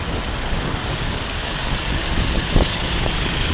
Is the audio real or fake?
fake